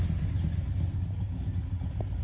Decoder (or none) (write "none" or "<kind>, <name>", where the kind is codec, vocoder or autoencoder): none